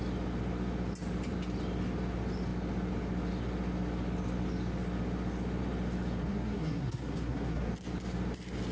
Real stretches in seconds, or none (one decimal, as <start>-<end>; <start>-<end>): 0.0-6.2; 7.7-8.7